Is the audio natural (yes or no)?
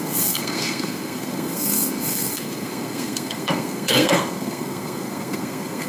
no